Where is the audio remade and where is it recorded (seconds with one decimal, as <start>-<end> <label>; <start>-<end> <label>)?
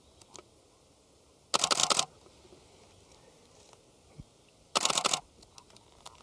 0.0-6.2 recorded